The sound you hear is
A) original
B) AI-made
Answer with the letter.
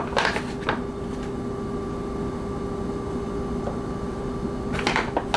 A